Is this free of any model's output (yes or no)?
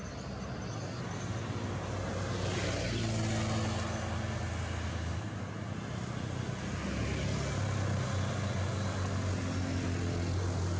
yes